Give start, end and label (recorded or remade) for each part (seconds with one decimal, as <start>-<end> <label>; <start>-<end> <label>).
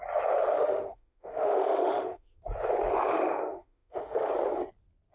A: 0.0-0.5 recorded; 0.5-2.4 remade; 2.4-3.1 recorded; 3.1-4.3 remade; 4.3-5.1 recorded